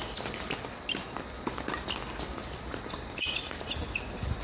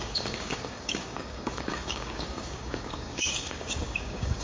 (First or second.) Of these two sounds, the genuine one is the first